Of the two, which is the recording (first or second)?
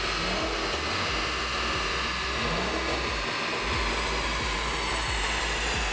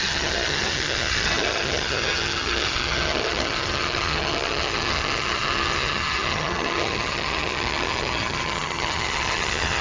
first